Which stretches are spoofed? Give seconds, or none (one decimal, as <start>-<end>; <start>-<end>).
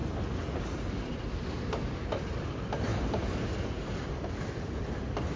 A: none